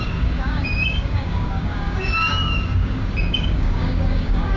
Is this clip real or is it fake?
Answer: fake